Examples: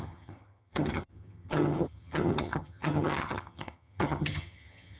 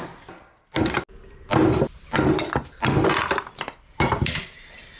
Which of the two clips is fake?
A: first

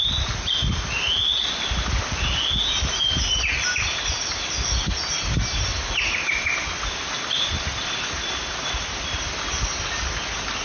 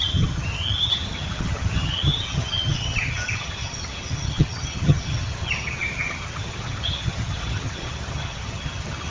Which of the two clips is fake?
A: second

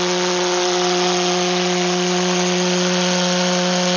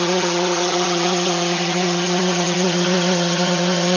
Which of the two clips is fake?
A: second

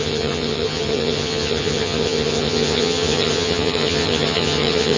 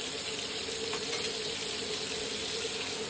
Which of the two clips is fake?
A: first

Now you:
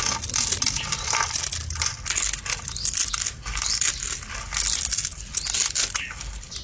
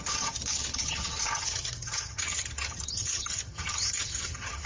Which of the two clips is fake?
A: second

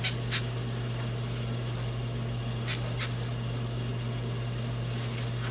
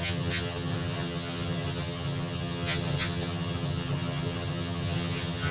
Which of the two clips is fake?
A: second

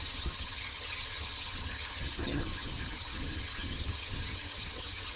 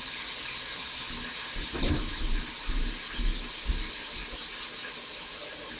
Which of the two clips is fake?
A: first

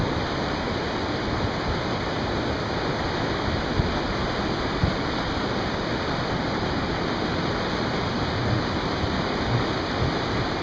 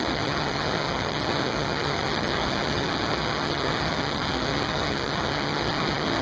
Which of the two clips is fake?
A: second